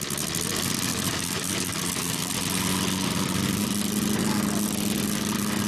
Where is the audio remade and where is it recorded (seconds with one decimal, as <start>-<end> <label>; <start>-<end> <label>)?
0.0-0.9 recorded; 0.9-2.3 remade; 2.3-5.7 recorded